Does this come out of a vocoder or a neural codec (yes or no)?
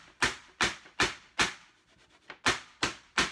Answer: no